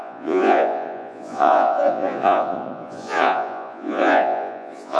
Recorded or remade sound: remade